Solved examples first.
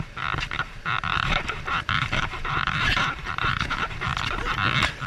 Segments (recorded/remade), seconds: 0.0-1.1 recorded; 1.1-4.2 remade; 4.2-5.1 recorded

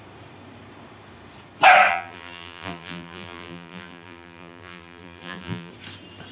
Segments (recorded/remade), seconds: 0.0-1.9 recorded; 1.9-5.7 remade; 5.7-6.3 recorded

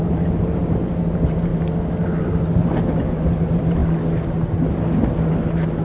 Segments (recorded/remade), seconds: 0.0-1.5 remade; 1.5-2.2 recorded; 2.2-3.8 remade; 3.8-5.3 recorded; 5.3-5.8 remade